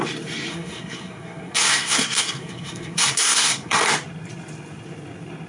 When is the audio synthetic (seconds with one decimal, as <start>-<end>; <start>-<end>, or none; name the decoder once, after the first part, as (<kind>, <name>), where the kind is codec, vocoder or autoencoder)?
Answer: 0.5-3.8 (codec, SNAC)